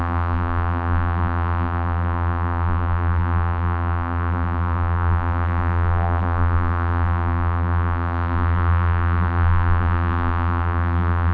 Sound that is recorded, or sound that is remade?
remade